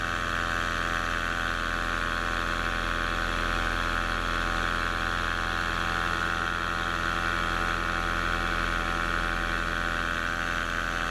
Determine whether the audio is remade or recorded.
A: recorded